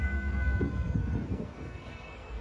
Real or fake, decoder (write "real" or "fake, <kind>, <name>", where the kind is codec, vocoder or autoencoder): fake, codec, SNAC